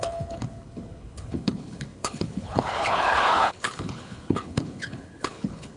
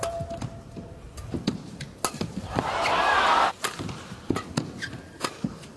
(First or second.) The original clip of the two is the second